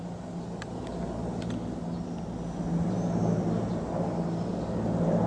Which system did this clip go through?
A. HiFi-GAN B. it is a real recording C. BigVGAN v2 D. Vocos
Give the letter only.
B